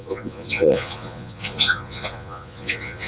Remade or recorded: remade